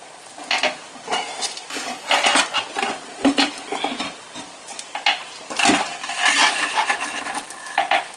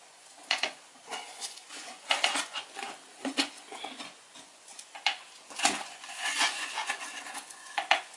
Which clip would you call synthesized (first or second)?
second